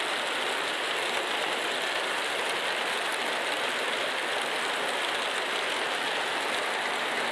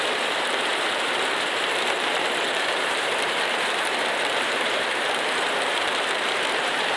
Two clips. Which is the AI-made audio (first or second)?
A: second